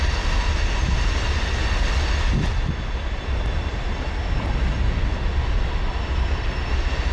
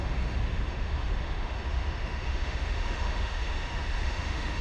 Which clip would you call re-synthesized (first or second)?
second